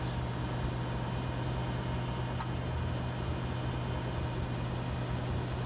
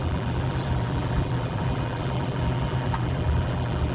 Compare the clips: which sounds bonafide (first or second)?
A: first